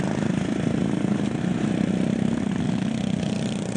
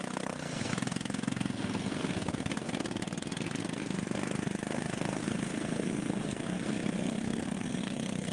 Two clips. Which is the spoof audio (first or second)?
second